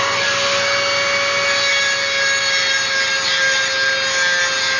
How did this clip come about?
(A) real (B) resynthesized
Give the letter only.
A